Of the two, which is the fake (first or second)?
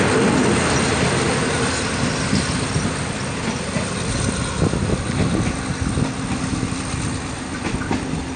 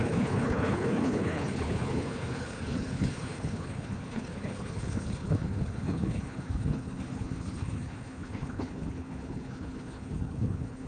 second